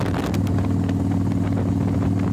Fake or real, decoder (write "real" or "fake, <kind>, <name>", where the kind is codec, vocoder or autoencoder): real